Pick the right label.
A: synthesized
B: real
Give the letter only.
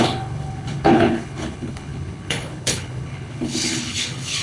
A